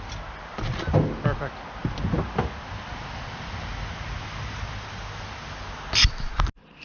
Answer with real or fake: real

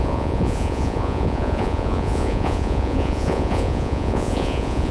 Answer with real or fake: fake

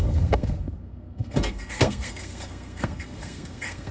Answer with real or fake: fake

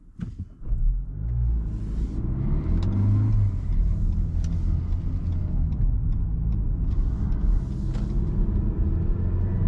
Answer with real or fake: real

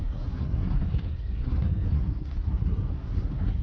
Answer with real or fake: fake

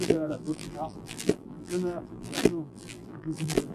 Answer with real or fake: fake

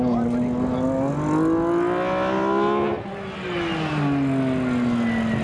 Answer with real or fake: real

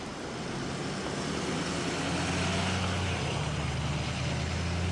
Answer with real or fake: real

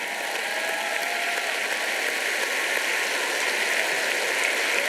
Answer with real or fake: real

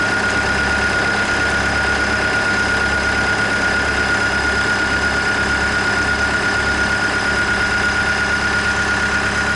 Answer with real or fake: real